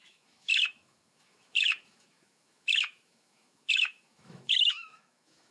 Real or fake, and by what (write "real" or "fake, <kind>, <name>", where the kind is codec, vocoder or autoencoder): fake, autoencoder, DAC-VAE